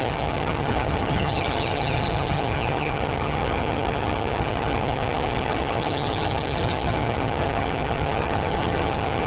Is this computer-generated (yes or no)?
yes